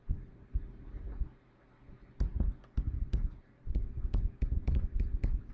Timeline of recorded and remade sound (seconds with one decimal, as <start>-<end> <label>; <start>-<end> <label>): 0.0-5.5 recorded